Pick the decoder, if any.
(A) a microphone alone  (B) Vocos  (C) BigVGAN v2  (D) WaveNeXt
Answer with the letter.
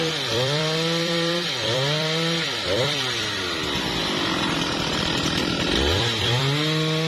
C